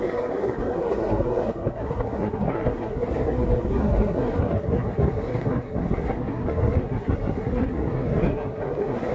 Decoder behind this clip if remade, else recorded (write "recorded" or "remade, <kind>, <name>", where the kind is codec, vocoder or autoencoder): remade, codec, SNAC